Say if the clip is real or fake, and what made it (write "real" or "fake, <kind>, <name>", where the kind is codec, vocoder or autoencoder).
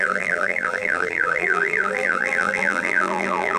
fake, vocoder, BigVGAN v2